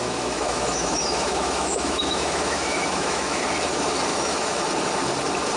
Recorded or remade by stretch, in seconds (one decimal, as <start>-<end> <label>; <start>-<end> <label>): 0.0-3.4 remade; 3.4-4.1 recorded; 4.1-4.6 remade; 4.6-5.6 recorded